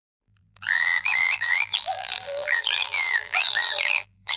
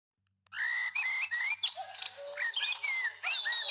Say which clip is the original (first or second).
second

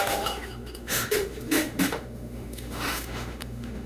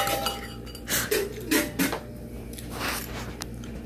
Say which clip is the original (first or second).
second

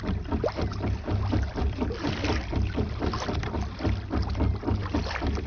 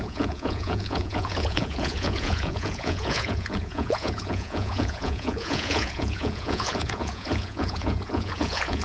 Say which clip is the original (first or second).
first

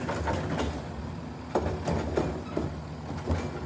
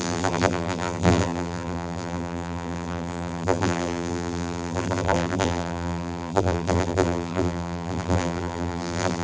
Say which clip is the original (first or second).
first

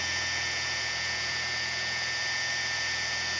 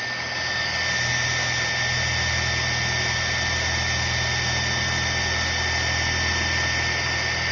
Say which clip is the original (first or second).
second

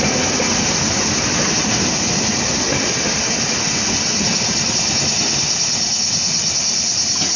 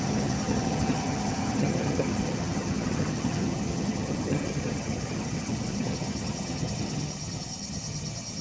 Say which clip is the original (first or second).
first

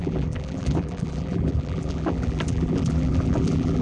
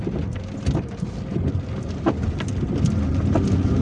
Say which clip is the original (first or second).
second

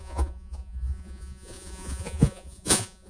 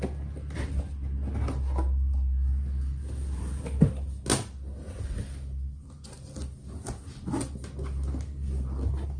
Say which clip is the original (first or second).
second